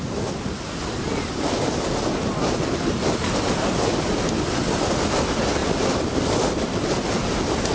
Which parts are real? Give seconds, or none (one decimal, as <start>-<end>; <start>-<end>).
0.0-7.7